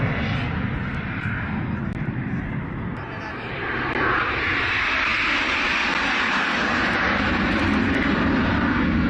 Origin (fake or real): real